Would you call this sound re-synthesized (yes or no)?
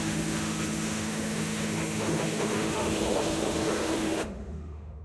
yes